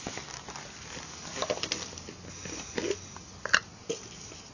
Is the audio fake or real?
real